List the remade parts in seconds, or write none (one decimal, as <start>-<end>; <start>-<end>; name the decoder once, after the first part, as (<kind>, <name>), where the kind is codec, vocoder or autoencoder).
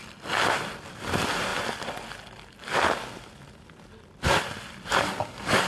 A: 4.9-5.7 (codec, DAC)